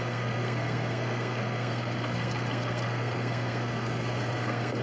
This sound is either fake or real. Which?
fake